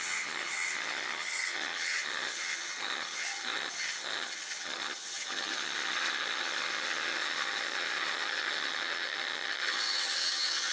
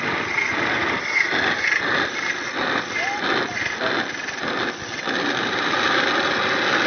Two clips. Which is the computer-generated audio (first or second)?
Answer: first